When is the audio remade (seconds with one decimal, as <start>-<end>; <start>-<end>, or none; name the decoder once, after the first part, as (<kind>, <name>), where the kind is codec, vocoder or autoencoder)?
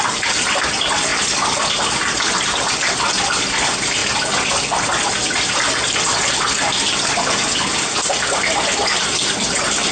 none